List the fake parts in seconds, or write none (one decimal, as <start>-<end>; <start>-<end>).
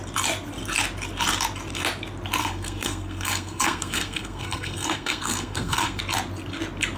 2.4-6.0